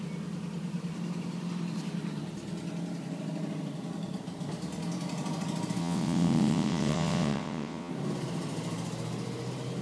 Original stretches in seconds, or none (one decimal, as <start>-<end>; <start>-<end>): 0.0-5.8; 7.9-9.8